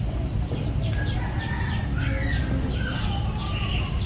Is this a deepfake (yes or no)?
yes